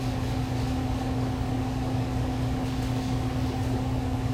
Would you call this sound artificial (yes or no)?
yes